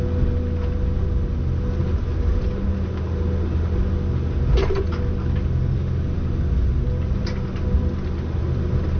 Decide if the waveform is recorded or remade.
recorded